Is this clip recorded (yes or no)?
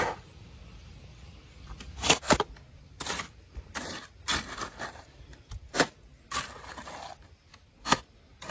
yes